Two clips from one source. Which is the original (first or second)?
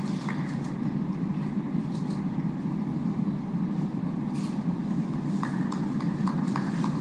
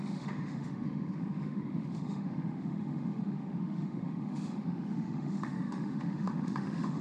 first